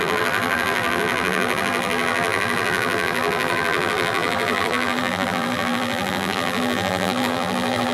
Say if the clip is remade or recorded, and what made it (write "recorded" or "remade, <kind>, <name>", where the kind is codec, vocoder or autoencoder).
remade, vocoder, BigVGAN v2